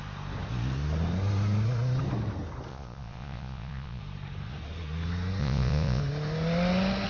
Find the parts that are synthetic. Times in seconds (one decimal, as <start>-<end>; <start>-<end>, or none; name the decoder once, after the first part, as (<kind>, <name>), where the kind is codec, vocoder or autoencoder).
2.7-4.0 (vocoder, Vocos); 5.4-6.0